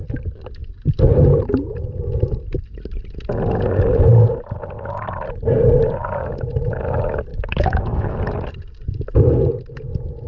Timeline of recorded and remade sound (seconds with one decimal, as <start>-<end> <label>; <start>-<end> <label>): 0.0-7.3 recorded; 7.3-8.2 remade; 8.2-10.3 recorded